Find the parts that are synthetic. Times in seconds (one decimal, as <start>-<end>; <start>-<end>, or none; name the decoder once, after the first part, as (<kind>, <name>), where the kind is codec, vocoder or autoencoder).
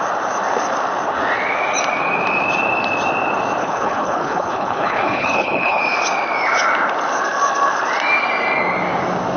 3.6-5.8 (codec, HILCodec)